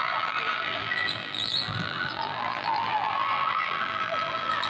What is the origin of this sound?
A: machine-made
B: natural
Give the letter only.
A